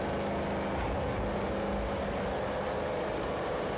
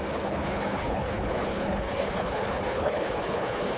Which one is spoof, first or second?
second